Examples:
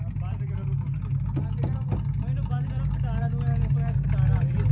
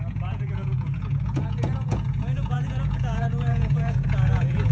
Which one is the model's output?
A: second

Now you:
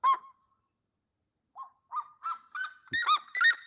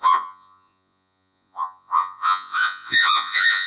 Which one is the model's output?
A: second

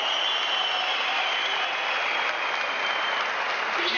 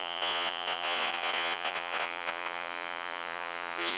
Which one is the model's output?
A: second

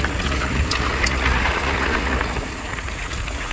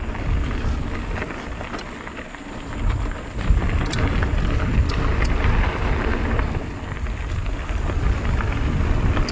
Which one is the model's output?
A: first